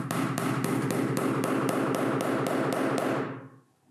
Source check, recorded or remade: recorded